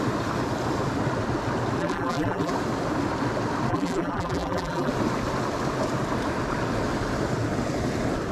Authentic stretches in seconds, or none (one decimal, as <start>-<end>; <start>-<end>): 0.0-1.8; 2.5-3.7; 4.9-8.3